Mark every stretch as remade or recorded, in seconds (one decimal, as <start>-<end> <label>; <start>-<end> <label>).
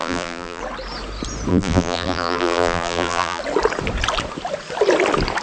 0.0-0.6 remade; 0.6-1.5 recorded; 1.5-3.4 remade; 3.4-5.4 recorded